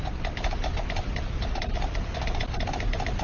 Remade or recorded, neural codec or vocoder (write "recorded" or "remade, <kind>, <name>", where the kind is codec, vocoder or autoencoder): recorded